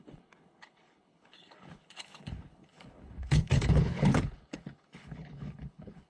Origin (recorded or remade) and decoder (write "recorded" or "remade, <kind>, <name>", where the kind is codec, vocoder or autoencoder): remade, codec, HILCodec